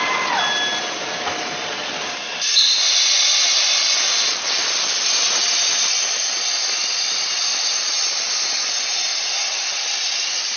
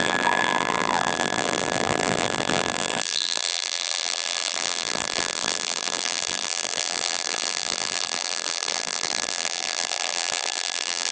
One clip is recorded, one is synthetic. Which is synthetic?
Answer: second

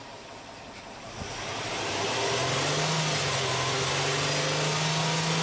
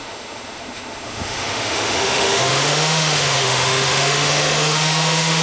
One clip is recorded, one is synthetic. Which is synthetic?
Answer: second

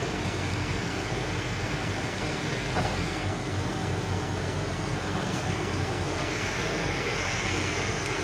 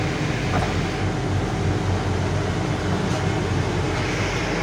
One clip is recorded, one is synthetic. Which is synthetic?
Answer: first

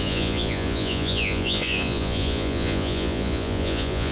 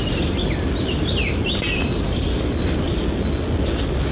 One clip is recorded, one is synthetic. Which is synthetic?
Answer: first